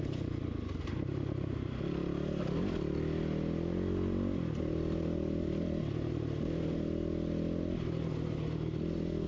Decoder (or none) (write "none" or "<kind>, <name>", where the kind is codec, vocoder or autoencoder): none